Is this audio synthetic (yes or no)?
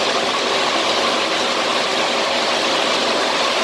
no